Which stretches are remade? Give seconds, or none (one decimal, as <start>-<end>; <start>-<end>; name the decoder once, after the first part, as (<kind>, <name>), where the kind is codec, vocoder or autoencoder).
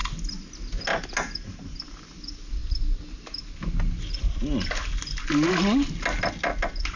none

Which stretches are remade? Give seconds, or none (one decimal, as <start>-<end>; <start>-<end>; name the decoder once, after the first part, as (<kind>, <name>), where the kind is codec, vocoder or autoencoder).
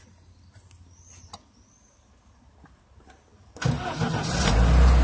none